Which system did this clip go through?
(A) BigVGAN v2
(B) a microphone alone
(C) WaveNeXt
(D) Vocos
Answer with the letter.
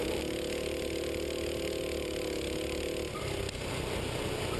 B